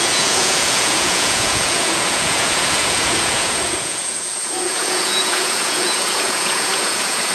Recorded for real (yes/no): no